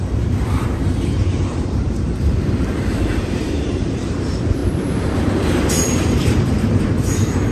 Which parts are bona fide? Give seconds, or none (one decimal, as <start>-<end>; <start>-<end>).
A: none